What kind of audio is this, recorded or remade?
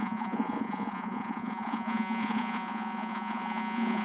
remade